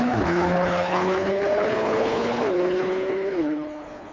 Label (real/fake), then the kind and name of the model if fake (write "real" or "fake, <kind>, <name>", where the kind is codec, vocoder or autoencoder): fake, codec, HILCodec